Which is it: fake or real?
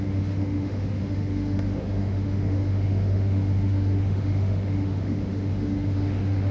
fake